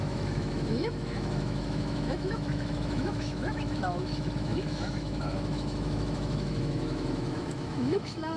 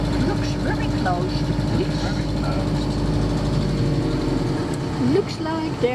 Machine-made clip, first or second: first